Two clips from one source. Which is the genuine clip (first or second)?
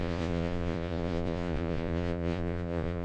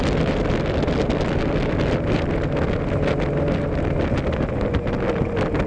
second